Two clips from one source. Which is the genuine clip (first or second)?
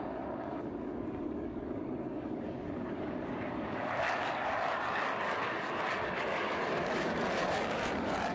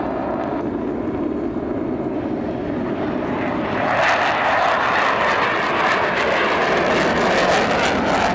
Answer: second